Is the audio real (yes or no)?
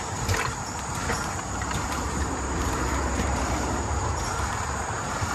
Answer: no